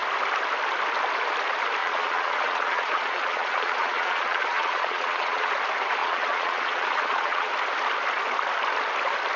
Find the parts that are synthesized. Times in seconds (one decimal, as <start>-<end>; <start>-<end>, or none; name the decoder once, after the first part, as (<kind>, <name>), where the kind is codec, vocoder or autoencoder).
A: 1.8-5.5 (vocoder, Vocos); 6.0-7.5